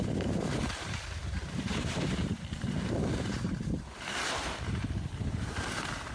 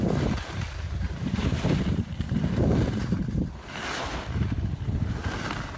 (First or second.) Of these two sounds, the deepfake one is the first